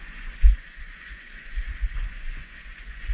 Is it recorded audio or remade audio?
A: remade